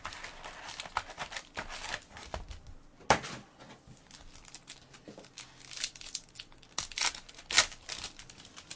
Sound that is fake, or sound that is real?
real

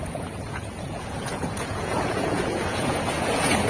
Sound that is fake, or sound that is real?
fake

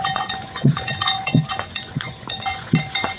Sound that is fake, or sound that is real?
fake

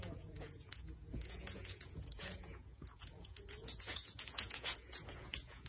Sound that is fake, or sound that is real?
fake